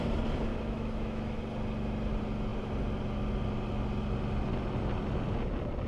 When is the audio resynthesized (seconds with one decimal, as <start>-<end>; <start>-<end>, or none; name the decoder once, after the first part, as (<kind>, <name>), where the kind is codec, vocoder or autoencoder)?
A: 0.5-1.4 (autoencoder, DAC-VAE)